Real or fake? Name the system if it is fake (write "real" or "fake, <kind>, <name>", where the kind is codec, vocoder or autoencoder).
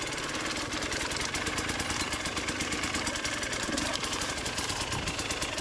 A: real